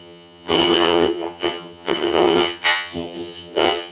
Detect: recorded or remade remade